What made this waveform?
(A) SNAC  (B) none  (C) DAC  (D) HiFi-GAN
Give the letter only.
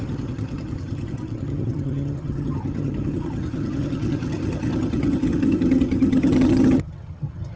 D